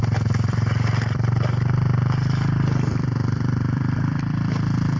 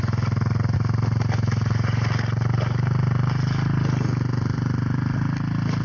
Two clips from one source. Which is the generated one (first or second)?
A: first